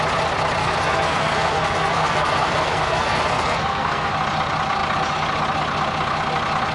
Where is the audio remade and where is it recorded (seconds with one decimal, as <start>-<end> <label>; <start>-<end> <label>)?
0.0-0.6 recorded; 0.6-4.1 remade; 4.1-6.7 recorded